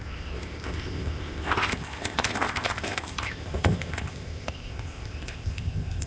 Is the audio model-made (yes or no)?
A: yes